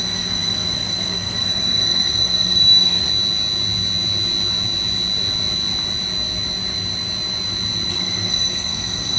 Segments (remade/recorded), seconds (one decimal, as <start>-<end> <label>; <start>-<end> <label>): 0.0-3.1 remade; 3.1-7.9 recorded; 7.9-9.2 remade